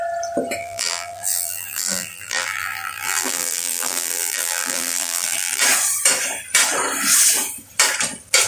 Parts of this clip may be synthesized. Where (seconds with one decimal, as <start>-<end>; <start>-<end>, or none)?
0.6-5.6